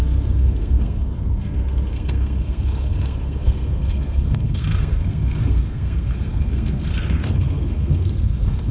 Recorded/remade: remade